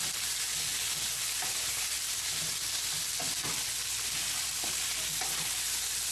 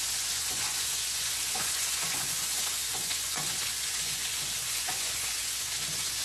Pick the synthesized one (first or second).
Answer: second